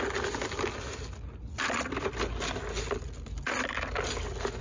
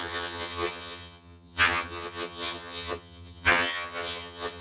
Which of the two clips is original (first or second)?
first